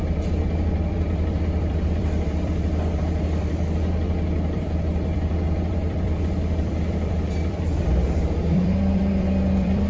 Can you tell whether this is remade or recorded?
remade